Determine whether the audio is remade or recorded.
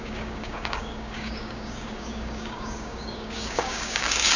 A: remade